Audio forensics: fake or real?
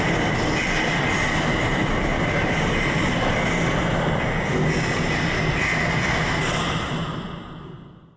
real